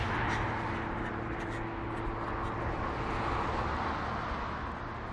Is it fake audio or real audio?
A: real